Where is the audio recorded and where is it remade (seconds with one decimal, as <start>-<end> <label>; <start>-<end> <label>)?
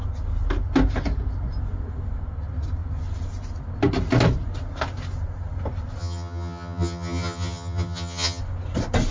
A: 0.0-6.0 recorded; 6.0-8.4 remade; 8.4-9.1 recorded